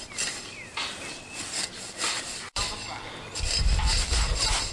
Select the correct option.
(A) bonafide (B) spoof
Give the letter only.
A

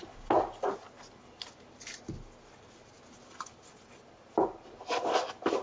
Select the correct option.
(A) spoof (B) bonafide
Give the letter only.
B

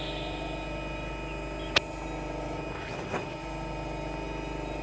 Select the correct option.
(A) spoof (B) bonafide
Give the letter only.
B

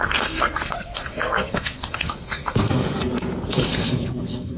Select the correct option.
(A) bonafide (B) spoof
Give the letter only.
B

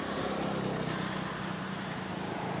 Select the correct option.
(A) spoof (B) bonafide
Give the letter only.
B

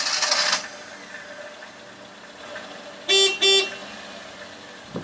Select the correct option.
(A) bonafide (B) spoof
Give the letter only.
A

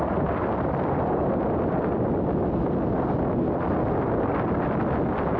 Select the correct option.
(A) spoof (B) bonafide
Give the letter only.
B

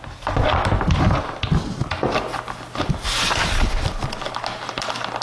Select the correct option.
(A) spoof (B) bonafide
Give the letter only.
B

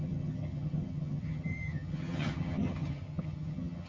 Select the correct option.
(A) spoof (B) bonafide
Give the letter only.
A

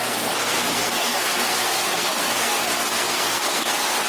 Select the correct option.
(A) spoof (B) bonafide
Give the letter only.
A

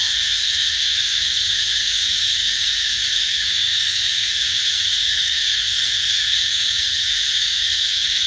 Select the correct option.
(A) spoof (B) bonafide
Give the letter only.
A